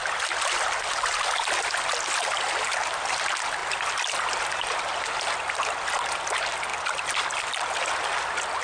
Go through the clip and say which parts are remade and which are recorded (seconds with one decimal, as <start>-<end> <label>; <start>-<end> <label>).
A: 0.0-3.6 recorded; 3.6-4.9 remade; 4.9-6.7 recorded; 6.7-7.8 remade; 7.8-8.6 recorded

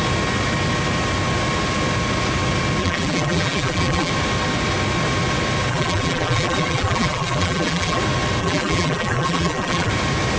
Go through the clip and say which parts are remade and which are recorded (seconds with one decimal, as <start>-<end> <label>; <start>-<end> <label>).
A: 0.0-2.8 recorded; 2.8-4.1 remade; 4.1-5.7 recorded; 5.7-8.0 remade; 8.0-8.4 recorded; 8.4-9.9 remade; 9.9-10.4 recorded

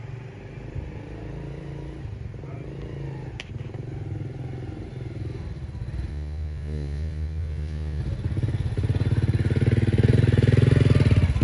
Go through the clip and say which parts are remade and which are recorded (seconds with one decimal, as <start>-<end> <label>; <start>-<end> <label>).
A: 0.0-6.1 recorded; 6.1-8.0 remade; 8.0-11.4 recorded

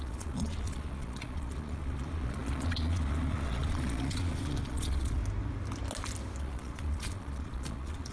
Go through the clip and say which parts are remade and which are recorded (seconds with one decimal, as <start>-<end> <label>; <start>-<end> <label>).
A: 0.0-5.2 remade; 5.2-6.4 recorded; 6.4-8.1 remade